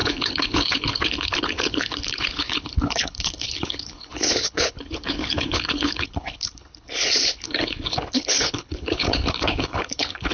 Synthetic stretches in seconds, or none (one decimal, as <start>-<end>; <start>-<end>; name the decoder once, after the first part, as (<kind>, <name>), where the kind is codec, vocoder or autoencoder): 0.0-10.3 (codec, HILCodec)